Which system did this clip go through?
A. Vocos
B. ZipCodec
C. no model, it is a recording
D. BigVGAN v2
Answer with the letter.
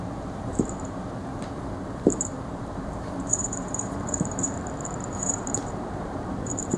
D